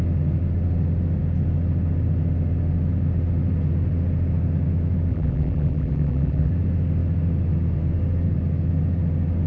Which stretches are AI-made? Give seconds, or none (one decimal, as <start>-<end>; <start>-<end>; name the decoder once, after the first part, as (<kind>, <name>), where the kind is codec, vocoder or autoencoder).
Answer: 5.1-6.5 (vocoder, BigVGAN v2)